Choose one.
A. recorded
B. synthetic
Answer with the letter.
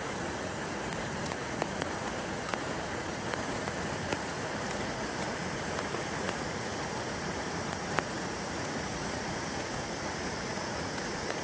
B